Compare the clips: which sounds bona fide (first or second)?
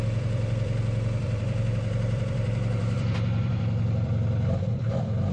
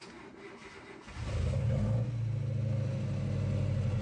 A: second